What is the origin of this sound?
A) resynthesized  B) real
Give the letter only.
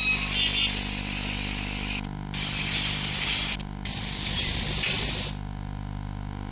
B